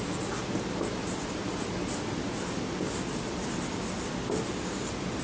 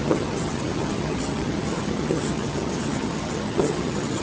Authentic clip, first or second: first